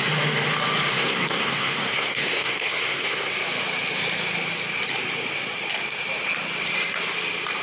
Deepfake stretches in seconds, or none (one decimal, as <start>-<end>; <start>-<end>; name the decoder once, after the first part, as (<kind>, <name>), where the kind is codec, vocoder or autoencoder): 0.9-3.3 (codec, SNAC)